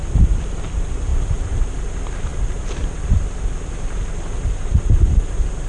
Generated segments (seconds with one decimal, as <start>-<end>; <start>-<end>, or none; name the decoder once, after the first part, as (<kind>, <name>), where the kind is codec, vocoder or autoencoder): 0.0-0.6 (vocoder, BigVGAN v2); 1.1-1.6

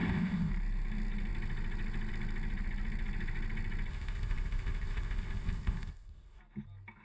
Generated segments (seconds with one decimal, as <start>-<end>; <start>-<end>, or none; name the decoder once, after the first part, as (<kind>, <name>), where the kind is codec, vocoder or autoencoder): 0.0-0.5 (codec, ZipCodec); 3.9-6.4